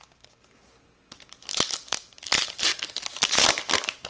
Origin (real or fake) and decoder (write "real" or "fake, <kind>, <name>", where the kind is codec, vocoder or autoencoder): real